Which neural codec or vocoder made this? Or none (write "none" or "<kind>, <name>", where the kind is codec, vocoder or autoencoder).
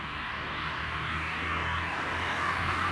codec, DAC